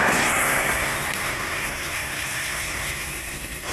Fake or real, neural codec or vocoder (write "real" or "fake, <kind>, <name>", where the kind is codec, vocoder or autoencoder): fake, codec, SNAC